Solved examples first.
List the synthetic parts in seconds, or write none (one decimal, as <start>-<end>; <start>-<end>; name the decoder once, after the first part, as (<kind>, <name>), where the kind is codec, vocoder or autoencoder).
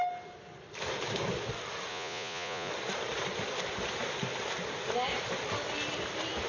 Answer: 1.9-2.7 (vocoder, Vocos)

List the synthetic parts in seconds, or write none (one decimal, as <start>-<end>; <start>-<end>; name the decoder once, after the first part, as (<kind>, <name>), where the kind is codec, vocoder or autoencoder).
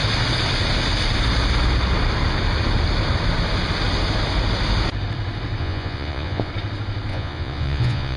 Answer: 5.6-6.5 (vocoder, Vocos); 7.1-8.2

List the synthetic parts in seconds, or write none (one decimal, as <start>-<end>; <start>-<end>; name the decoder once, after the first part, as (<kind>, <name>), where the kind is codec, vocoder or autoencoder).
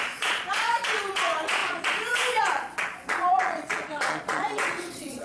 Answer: 0.0-5.2 (vocoder, Vocos)